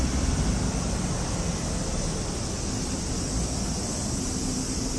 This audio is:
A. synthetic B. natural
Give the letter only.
B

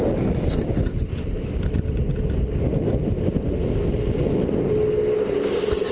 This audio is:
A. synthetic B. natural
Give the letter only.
B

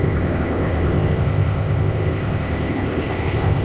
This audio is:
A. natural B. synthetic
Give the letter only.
B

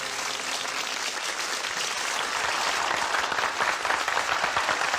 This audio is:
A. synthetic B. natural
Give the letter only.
B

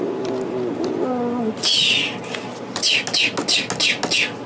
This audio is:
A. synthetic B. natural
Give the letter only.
B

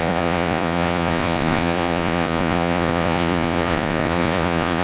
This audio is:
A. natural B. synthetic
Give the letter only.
B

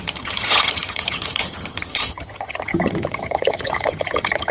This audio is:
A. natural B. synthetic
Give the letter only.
B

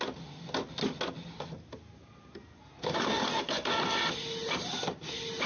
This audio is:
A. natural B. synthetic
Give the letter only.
A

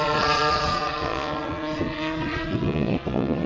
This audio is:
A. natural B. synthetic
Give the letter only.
B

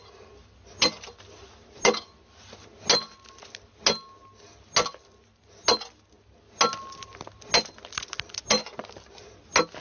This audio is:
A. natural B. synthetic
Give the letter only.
A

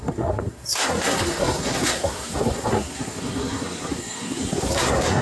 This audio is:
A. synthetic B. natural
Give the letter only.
A